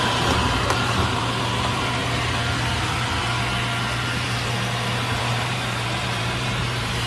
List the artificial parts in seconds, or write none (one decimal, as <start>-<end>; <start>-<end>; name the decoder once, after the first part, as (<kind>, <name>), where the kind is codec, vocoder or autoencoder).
0.0-2.0 (vocoder, BigVGAN v2); 5.2-7.1